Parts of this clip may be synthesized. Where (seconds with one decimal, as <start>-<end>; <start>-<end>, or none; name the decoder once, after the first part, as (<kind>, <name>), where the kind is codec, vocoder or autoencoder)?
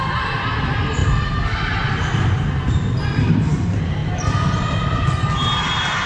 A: none